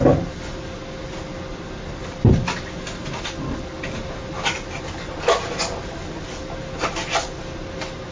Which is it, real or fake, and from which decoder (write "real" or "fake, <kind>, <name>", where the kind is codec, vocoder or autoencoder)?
real